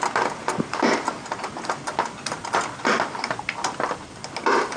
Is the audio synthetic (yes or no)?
no